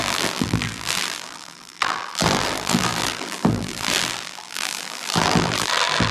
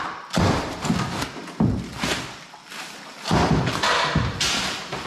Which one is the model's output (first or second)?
first